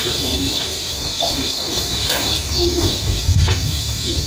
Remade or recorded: remade